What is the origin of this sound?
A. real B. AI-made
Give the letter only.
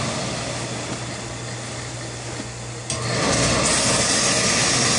A